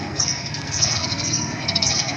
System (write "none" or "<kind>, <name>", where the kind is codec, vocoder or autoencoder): codec, SNAC